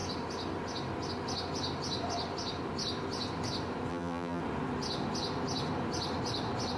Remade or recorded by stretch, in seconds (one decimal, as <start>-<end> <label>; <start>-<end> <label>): 0.0-3.9 recorded; 3.9-4.4 remade; 4.4-6.8 recorded